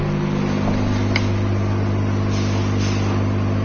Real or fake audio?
real